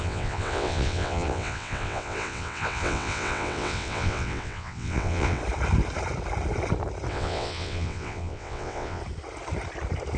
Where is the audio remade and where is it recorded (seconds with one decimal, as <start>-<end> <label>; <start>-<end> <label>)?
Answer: 0.0-5.4 remade; 5.4-7.1 recorded; 7.1-9.0 remade; 9.0-10.2 recorded